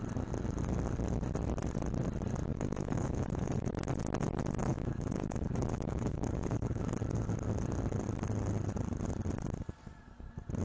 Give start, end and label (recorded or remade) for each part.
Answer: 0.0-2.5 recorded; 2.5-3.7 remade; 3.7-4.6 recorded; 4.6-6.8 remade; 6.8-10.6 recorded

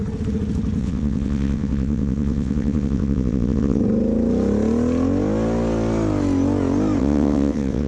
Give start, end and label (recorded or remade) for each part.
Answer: 0.0-0.8 recorded; 0.8-3.8 remade; 3.8-7.0 recorded; 7.0-7.9 remade

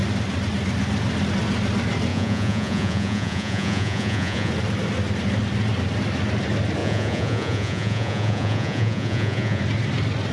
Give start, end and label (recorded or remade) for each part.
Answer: 0.0-2.1 recorded; 2.1-4.5 remade; 4.5-6.8 recorded; 6.8-9.6 remade; 9.6-10.3 recorded